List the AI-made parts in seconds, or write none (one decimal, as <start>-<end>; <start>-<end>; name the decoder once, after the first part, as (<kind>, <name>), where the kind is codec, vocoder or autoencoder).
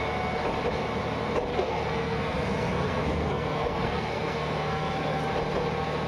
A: 1.5-5.2 (codec, SNAC)